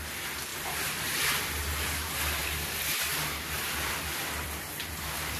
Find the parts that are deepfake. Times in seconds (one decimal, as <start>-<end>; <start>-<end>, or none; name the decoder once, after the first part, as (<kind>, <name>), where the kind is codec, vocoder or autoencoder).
2.4-4.7 (vocoder, BigVGAN v2)